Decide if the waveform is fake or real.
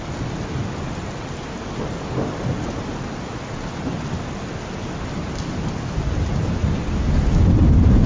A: real